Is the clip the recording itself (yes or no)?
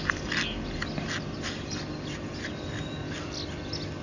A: yes